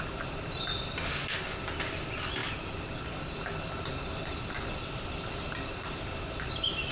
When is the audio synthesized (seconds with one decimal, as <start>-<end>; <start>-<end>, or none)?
none